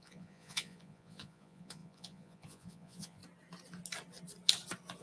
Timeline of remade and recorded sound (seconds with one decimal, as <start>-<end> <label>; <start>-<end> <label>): 0.0-3.2 remade; 3.2-5.0 recorded